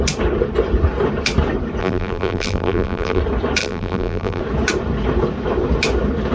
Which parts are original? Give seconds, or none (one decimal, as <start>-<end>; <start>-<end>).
0.0-1.8; 3.2-3.6; 4.4-6.3